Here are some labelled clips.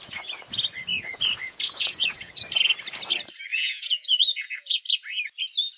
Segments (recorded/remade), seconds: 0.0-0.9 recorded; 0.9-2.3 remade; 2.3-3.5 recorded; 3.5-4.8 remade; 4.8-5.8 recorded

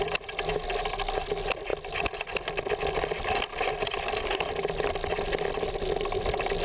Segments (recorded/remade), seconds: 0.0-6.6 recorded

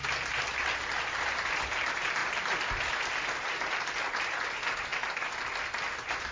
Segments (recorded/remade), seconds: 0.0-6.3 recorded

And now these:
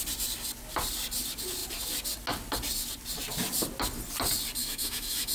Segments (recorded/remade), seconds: 0.0-4.6 recorded; 4.6-5.3 remade

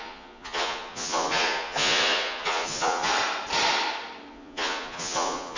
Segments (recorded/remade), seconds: 0.0-3.1 remade; 3.1-4.3 recorded; 4.3-5.6 remade

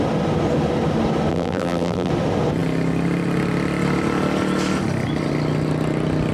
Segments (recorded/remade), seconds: 0.0-1.3 recorded; 1.3-2.1 remade; 2.1-6.3 recorded